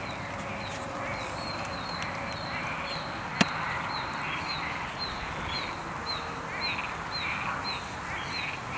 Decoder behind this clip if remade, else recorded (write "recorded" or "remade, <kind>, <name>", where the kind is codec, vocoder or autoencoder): recorded